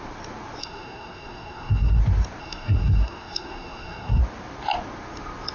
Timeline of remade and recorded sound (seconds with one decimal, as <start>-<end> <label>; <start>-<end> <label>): 0.0-0.6 recorded; 0.6-2.0 remade; 2.0-2.4 recorded; 2.4-4.2 remade; 4.2-5.5 recorded